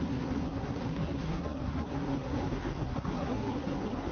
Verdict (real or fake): fake